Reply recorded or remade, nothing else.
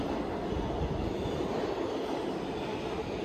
recorded